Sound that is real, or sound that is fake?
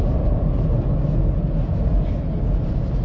real